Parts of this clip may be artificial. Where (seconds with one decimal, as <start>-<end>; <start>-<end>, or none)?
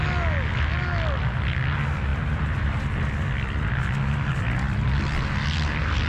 none